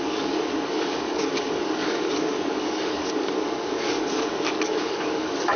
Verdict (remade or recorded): remade